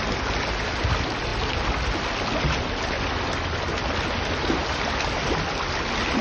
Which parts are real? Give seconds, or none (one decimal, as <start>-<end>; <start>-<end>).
0.0-6.2